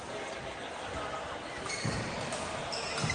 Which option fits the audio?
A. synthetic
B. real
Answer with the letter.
B